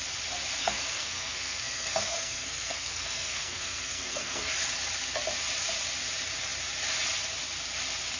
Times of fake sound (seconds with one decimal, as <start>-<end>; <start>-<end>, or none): 0.6-4.5